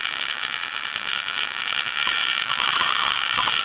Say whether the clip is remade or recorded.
remade